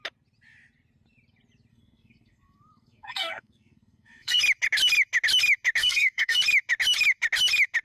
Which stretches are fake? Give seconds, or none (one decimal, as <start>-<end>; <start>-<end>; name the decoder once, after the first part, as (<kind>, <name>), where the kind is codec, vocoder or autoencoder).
1.7-4.4 (codec, SNAC); 5.8-6.4